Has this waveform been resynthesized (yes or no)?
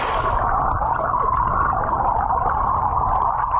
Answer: no